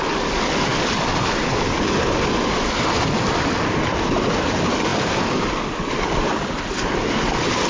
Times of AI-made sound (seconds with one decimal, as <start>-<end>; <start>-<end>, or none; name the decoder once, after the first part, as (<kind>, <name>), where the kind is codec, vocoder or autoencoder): none